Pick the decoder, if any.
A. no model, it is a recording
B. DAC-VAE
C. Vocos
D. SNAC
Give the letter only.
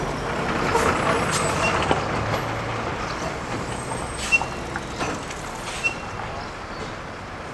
A